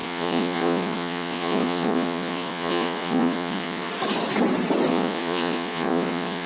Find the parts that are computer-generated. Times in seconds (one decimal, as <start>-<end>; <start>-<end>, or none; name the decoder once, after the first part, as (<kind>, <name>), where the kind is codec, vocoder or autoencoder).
0.0-3.9 (vocoder, Vocos); 4.9-6.5